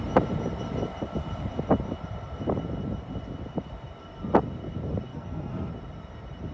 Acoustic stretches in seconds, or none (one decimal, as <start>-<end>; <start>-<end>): 0.0-5.1; 5.7-6.5